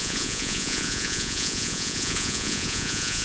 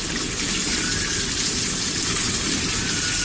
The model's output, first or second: first